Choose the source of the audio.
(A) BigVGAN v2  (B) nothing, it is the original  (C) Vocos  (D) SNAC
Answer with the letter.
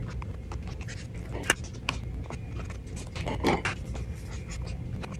B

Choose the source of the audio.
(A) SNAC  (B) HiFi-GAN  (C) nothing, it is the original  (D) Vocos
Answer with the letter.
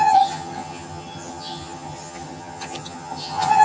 B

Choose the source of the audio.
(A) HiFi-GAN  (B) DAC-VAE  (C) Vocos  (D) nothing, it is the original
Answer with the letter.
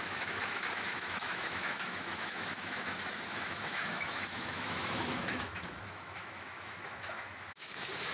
B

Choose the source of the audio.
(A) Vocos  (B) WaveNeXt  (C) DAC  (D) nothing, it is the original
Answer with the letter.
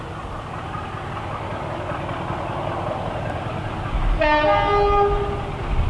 D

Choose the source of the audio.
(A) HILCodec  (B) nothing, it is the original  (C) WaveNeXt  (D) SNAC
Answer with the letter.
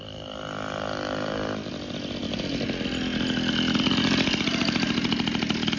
B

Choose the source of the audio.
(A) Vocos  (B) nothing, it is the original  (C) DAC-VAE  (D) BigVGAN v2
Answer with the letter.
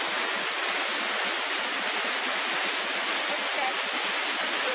B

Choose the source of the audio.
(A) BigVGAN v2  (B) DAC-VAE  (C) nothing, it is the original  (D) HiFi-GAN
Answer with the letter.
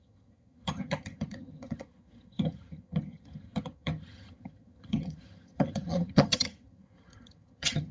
D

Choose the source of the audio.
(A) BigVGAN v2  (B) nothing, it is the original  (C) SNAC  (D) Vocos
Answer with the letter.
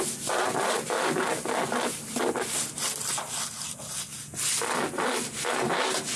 B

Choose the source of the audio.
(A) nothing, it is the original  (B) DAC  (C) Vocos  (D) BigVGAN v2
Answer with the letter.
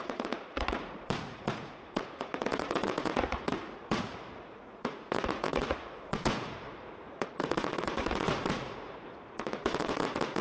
C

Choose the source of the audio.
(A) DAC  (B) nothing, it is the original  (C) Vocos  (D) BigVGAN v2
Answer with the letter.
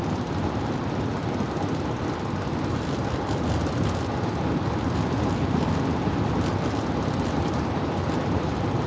B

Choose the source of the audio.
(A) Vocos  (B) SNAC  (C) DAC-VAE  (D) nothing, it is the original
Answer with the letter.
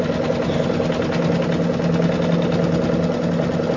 D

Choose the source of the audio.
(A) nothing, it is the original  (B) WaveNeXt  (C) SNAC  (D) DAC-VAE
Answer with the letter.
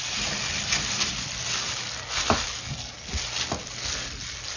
A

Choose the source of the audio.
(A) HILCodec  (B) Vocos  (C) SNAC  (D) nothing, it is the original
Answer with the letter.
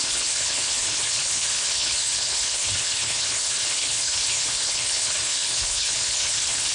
A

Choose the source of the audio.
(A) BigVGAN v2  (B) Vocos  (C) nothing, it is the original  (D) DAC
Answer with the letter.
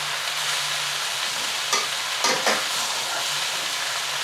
C